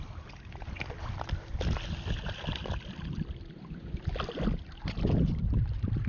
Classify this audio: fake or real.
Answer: real